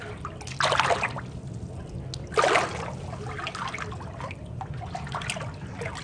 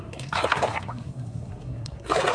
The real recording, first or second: first